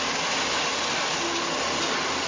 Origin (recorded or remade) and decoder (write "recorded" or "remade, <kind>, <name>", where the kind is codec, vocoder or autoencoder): recorded